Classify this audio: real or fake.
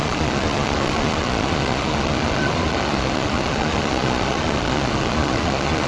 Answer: fake